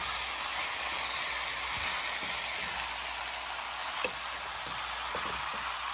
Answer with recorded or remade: recorded